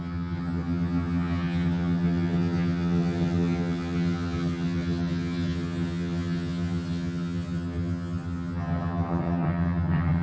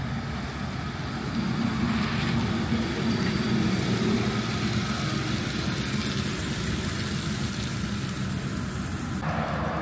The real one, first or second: second